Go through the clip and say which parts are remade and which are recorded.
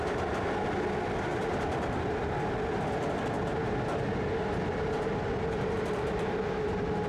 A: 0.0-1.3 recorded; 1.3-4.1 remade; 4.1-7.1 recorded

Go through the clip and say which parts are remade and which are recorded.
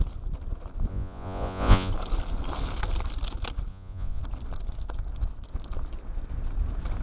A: 0.0-0.9 recorded; 0.9-1.9 remade; 1.9-3.7 recorded; 3.7-4.2 remade; 4.2-7.0 recorded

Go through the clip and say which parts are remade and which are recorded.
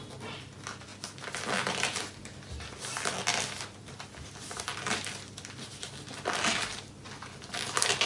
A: 0.0-8.1 recorded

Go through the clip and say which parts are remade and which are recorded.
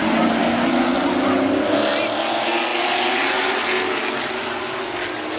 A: 0.0-5.4 recorded